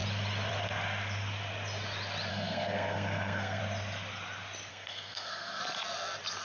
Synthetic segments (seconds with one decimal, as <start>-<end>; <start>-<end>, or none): 2.3-3.6; 4.7-5.6